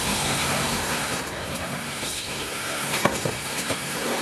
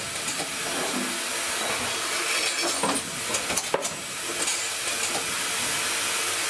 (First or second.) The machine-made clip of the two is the first